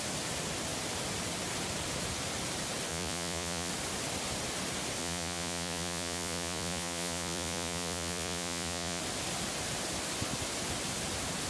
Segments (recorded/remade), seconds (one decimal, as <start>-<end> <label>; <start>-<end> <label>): 0.0-2.9 recorded; 2.9-3.7 remade; 3.7-5.0 recorded; 5.0-9.0 remade; 9.0-11.5 recorded